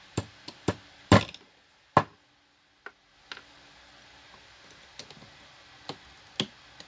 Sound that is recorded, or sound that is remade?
recorded